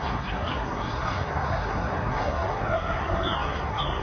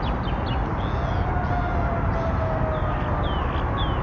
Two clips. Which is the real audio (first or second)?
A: second